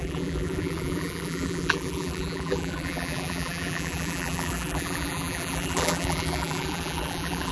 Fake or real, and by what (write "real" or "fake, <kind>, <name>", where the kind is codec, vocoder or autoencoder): fake, vocoder, BigVGAN v2